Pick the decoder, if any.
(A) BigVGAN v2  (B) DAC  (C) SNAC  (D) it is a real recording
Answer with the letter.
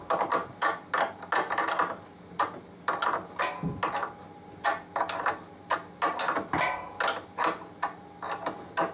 D